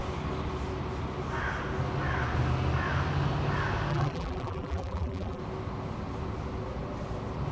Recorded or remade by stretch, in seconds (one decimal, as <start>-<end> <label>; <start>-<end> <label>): 0.0-3.9 recorded; 3.9-5.4 remade; 5.4-7.5 recorded